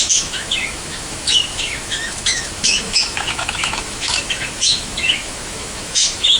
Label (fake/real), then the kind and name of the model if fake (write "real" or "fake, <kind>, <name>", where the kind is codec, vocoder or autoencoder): fake, autoencoder, DAC-VAE